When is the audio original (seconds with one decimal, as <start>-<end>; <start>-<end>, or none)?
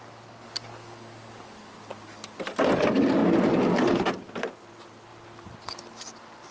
0.0-6.5